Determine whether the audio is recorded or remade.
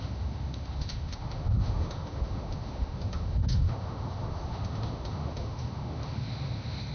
remade